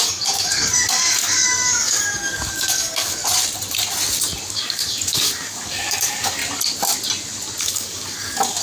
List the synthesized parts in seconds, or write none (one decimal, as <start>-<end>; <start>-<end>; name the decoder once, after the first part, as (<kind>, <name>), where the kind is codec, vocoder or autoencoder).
0.0-3.2 (codec, DAC); 4.5-6.4; 7.6-8.6